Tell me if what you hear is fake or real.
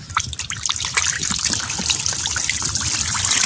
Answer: real